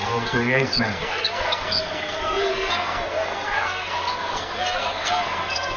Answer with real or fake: fake